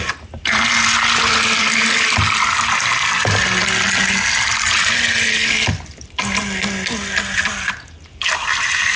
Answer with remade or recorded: recorded